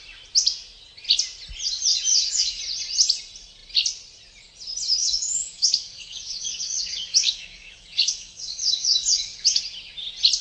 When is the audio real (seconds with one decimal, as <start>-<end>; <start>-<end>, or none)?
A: 0.0-2.1; 2.6-5.0; 9.6-10.4